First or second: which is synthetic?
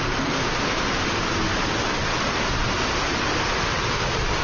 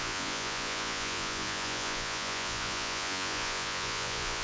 second